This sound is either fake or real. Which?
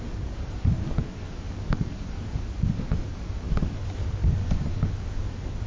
fake